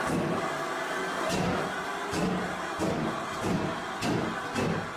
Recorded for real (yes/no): yes